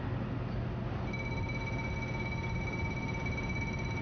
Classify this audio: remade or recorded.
recorded